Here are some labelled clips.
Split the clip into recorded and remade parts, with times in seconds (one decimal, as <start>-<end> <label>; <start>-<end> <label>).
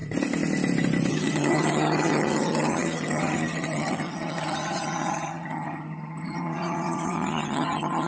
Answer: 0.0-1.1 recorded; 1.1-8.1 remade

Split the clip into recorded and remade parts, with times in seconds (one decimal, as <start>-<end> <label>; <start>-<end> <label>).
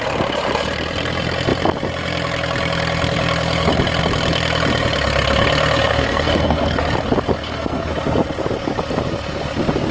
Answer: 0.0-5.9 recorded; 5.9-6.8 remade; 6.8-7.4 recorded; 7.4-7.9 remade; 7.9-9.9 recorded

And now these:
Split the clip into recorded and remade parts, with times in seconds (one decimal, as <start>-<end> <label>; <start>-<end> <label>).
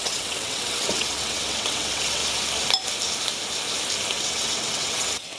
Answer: 0.0-2.2 remade; 2.2-4.1 recorded; 4.1-5.4 remade